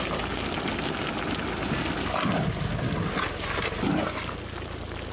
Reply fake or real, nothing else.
real